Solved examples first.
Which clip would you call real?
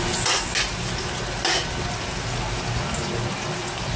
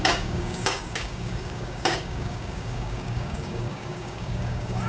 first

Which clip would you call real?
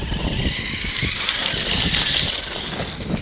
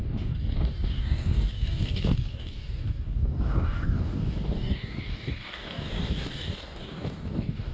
first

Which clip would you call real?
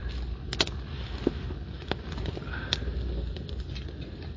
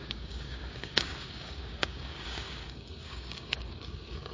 first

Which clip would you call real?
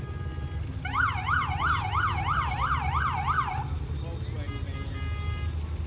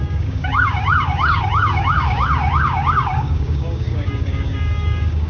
first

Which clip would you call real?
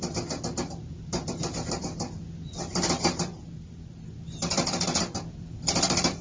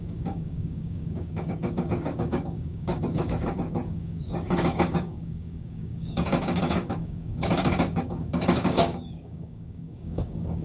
first